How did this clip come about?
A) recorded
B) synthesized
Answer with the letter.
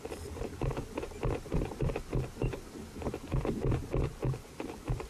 B